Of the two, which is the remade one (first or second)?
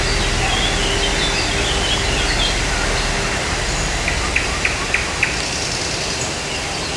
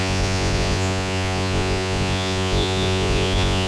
second